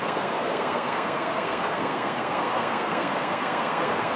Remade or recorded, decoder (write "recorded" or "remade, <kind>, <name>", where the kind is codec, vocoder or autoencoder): remade, codec, SNAC